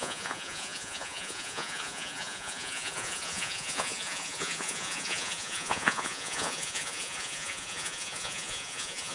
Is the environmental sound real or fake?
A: fake